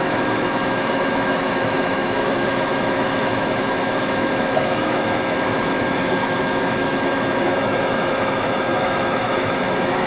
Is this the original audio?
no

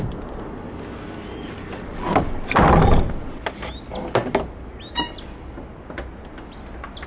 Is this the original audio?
yes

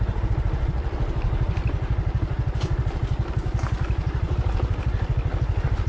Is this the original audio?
yes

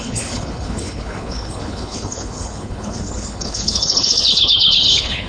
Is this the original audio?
no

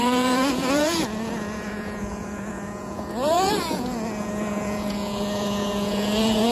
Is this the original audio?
no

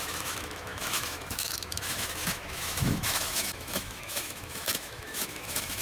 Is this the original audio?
no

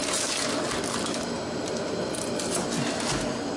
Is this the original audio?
yes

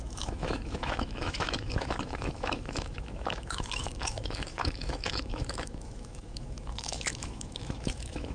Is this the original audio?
no